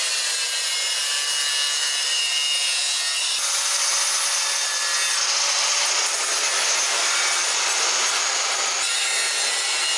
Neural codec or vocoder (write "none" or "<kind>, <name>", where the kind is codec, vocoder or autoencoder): none